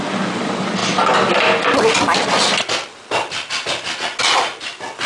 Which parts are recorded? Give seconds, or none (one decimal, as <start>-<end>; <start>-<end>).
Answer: 0.0-5.1